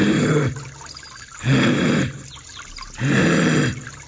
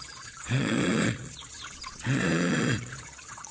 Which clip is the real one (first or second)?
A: first